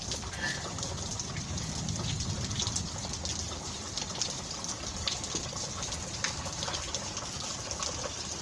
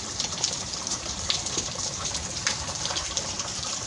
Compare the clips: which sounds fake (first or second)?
second